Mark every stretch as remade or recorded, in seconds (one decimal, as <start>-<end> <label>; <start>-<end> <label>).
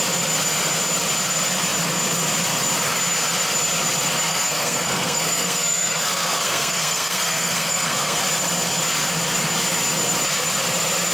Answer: 0.0-4.3 recorded; 4.3-8.2 remade; 8.2-11.1 recorded